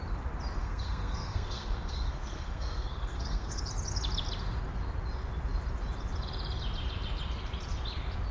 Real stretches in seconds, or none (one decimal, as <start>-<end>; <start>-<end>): 0.0-0.6; 3.6-8.3